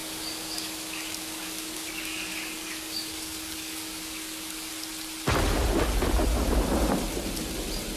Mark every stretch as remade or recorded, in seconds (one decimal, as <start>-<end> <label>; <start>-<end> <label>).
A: 0.0-4.7 remade; 4.7-8.0 recorded